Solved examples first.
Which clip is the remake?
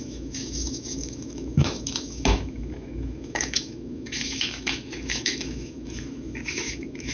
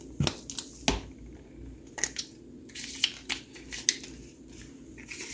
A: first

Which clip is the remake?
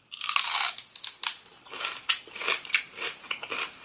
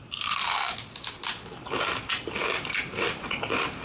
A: first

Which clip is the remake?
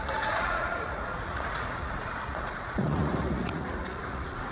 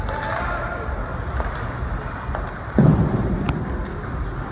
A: first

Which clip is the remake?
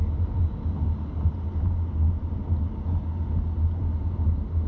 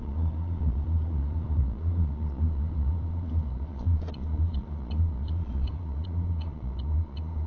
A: second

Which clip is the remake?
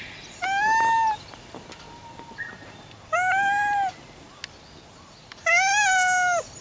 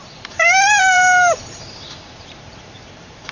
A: second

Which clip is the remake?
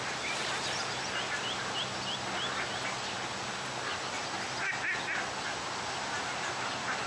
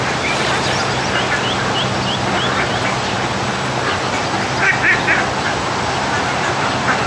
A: second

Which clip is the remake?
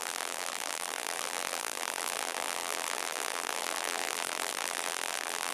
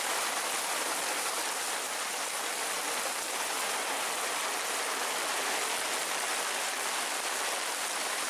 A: first